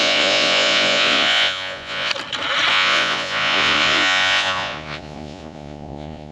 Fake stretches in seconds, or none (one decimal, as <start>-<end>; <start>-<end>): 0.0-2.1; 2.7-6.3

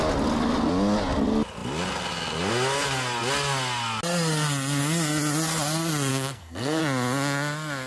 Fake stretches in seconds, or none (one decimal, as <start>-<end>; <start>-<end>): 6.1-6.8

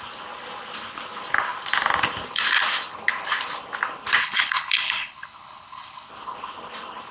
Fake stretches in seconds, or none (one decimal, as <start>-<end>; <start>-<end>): 4.2-6.1

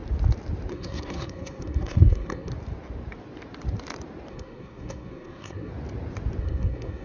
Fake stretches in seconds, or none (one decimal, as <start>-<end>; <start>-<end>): 0.7-2.5; 4.3-5.7; 6.4-7.0

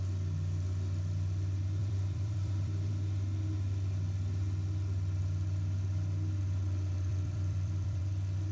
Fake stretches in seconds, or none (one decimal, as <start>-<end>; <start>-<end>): 1.8-2.9; 7.1-8.0

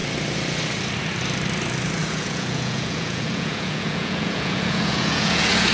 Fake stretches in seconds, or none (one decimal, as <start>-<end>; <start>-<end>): 2.0-5.7

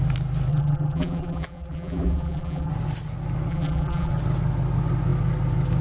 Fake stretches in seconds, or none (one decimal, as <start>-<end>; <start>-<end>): 0.5-2.7; 3.5-4.1